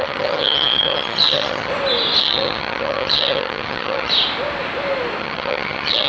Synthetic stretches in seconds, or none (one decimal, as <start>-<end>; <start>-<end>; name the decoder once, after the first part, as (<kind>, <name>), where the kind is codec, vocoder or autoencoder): 0.0-1.7 (vocoder, HiFi-GAN); 2.2-4.1; 5.2-6.1